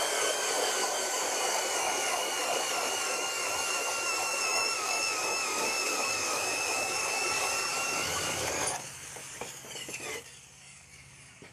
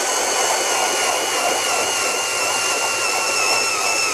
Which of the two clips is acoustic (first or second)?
second